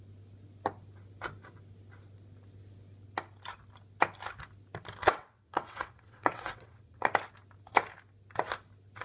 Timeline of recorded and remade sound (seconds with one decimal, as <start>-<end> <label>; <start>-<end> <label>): 0.0-5.0 recorded; 5.0-7.1 remade; 7.1-9.0 recorded